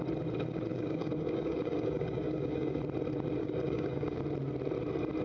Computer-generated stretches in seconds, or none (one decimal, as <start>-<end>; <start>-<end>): 0.7-2.8; 3.4-4.2